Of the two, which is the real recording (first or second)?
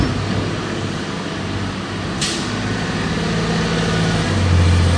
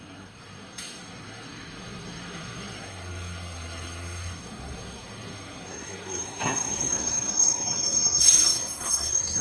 first